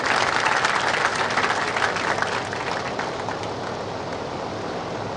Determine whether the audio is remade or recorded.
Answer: recorded